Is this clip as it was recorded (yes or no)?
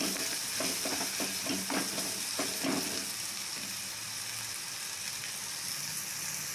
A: yes